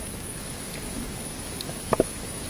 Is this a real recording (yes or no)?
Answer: no